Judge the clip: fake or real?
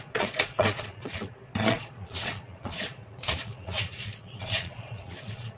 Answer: fake